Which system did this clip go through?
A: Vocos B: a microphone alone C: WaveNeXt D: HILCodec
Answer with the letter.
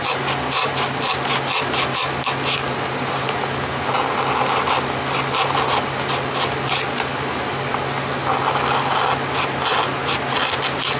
B